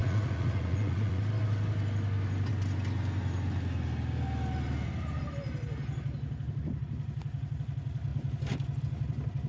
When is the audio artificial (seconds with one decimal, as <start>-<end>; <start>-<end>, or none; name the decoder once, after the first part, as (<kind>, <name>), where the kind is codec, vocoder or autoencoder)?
0.0-1.2 (vocoder, Vocos)

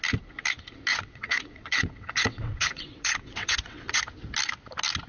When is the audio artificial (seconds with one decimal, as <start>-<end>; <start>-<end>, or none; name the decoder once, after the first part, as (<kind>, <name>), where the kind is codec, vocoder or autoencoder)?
0.9-4.0 (vocoder, WaveNeXt)

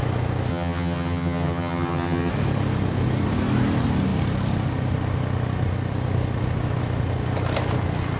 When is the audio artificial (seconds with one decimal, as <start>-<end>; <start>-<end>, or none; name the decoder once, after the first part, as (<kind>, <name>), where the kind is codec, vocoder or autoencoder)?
0.5-2.3 (vocoder, HiFi-GAN)

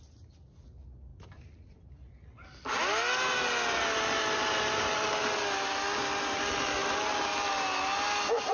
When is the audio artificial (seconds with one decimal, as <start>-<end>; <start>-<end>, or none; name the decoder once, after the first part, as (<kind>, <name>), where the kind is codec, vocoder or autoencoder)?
none

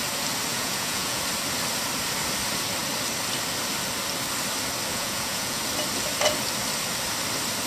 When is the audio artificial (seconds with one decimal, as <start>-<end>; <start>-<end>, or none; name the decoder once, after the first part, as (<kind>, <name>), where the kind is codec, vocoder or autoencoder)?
0.5-1.2 (vocoder, Vocos); 4.9-5.6

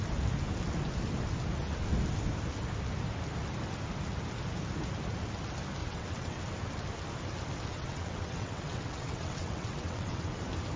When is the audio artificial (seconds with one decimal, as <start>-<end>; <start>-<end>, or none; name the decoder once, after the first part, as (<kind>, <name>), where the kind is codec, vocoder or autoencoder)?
5.8-6.4 (vocoder, WaveNeXt); 7.7-10.4